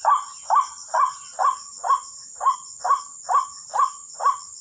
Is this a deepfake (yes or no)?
no